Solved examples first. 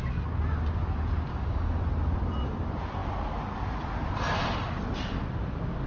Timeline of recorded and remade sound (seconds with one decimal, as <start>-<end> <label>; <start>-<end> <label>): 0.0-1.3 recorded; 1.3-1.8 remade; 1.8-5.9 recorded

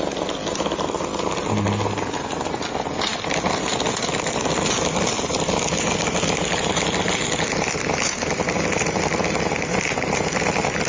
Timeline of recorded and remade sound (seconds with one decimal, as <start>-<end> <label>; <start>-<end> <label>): 0.0-10.9 recorded

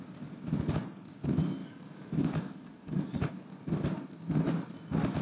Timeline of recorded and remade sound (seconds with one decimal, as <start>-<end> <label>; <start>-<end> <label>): 0.0-1.6 recorded; 1.6-3.3 remade; 3.3-5.2 recorded

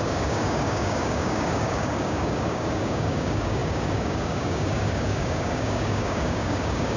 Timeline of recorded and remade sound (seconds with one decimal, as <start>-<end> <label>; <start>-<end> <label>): 0.0-7.0 remade